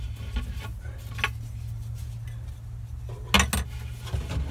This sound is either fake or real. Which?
real